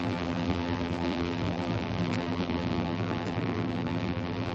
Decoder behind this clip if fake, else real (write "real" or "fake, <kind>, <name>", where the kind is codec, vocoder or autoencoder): fake, vocoder, BigVGAN v2